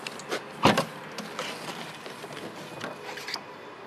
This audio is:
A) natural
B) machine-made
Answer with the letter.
A